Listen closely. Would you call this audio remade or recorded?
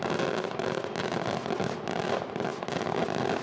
recorded